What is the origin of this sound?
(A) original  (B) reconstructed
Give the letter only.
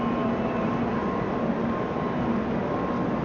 B